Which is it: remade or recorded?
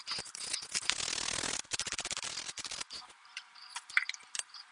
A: recorded